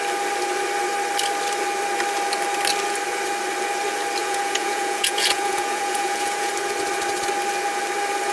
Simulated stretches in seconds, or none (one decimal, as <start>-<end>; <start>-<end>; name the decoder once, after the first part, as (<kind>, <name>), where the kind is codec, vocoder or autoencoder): 4.2-6.5 (vocoder, Vocos)